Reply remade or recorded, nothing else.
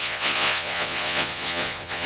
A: remade